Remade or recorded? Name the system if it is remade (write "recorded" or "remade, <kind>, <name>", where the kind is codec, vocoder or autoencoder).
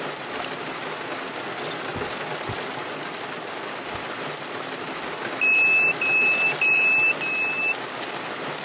recorded